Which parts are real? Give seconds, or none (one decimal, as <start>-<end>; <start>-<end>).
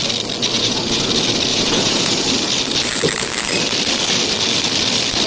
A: 0.0-0.5; 1.1-1.5; 2.3-5.3